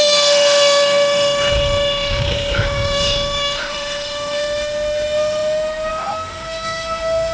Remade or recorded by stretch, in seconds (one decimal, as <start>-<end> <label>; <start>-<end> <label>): 0.0-7.3 remade